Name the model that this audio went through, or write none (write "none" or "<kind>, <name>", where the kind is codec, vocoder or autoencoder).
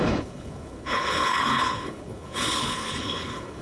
codec, HILCodec